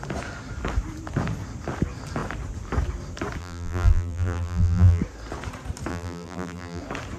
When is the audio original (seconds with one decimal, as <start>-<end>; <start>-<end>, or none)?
0.0-3.4; 5.0-5.9; 6.8-7.2